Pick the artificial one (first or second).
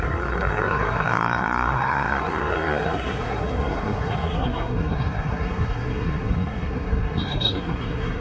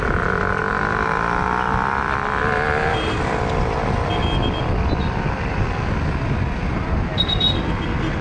first